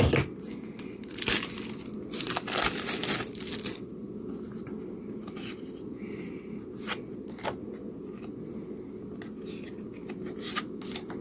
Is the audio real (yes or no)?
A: yes